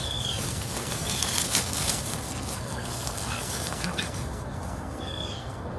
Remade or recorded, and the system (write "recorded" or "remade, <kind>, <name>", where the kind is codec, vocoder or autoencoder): remade, codec, SNAC